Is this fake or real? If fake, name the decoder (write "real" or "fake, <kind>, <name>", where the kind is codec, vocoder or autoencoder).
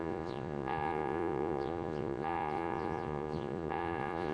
fake, vocoder, Vocos